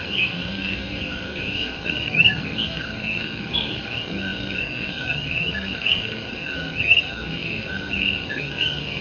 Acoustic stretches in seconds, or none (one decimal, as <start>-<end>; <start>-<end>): none